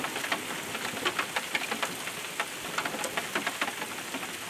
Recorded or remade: recorded